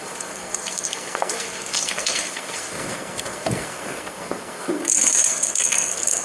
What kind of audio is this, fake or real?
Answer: fake